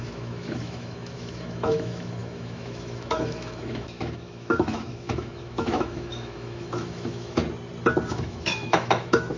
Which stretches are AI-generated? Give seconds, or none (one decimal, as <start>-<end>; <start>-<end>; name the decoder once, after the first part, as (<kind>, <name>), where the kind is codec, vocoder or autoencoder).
0.0-7.4 (autoencoder, DAC-VAE); 8.1-9.4